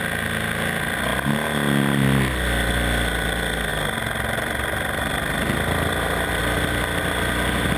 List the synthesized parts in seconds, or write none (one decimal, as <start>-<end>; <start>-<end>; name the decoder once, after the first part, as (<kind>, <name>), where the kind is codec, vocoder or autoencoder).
none